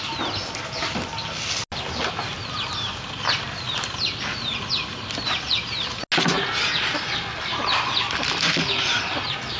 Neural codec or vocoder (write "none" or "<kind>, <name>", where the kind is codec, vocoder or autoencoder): none